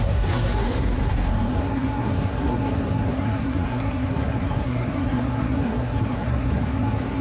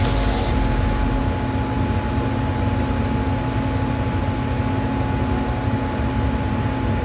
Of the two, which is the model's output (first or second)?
first